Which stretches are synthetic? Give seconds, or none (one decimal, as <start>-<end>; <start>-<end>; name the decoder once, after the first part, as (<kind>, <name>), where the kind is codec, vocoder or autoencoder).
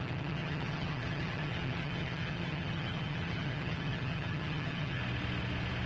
0.0-5.0 (vocoder, HiFi-GAN)